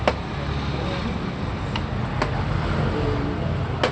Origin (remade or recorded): recorded